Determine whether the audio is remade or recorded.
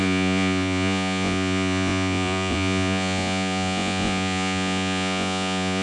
remade